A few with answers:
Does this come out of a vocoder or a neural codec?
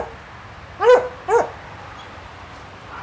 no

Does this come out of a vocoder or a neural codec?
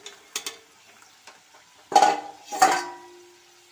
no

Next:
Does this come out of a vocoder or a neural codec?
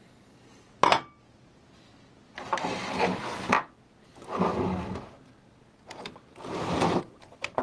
no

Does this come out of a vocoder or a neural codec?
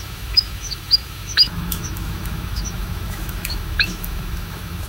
yes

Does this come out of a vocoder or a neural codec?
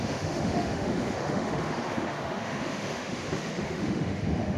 yes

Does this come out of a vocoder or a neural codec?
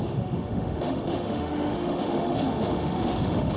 yes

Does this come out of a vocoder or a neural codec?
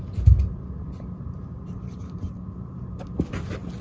no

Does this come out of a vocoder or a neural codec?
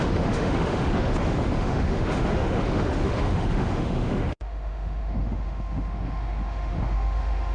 yes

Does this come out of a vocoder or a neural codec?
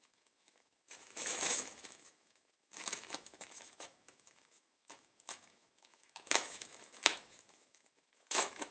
yes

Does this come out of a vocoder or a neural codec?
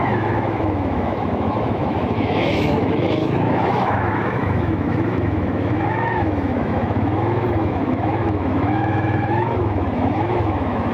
yes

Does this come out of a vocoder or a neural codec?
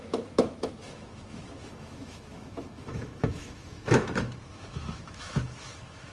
yes